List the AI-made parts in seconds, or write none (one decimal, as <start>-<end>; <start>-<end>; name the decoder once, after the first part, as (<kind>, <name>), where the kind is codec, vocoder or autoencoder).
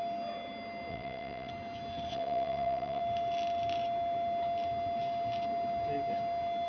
0.9-1.5 (vocoder, WaveNeXt); 2.1-3.0